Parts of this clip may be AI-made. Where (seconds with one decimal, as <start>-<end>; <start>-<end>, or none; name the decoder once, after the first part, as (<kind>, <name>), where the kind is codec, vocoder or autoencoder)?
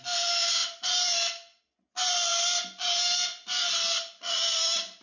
none